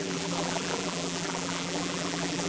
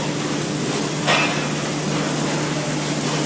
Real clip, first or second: second